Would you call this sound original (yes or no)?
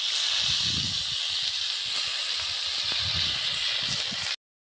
yes